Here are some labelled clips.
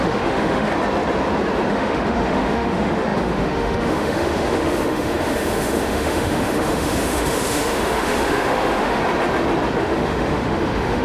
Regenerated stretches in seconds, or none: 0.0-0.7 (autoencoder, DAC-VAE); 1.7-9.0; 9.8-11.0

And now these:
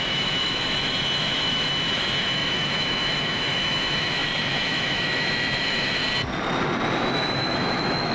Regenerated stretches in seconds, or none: 0.0-6.0 (autoencoder, DAC-VAE); 7.0-8.1